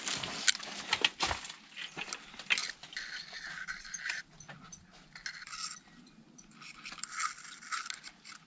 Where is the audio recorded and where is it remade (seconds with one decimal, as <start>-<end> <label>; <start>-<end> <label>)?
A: 0.0-8.5 recorded

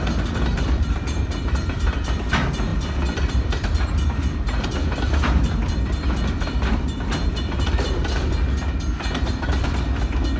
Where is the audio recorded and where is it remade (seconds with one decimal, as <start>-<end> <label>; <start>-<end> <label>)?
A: 0.0-10.4 remade

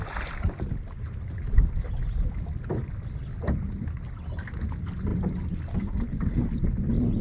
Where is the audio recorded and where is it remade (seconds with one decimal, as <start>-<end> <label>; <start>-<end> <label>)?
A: 0.0-7.2 recorded